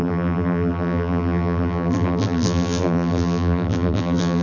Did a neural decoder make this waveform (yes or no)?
yes